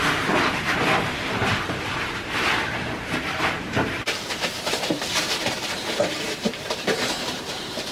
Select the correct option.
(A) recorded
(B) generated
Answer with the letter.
B